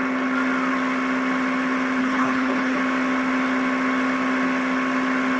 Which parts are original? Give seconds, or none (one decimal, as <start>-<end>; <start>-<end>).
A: 0.0-2.0; 2.8-5.4